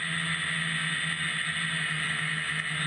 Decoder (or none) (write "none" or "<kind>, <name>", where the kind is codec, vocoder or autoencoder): none